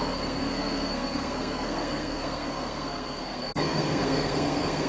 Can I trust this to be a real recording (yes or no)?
no